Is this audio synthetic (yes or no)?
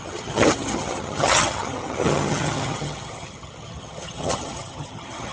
yes